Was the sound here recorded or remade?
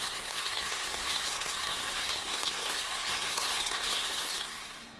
remade